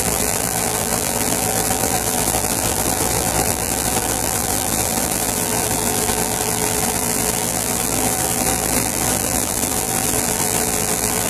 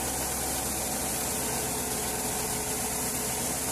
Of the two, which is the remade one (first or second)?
first